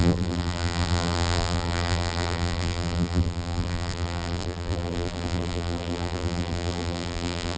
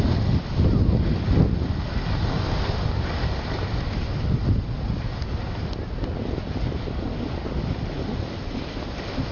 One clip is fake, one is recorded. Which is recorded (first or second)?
second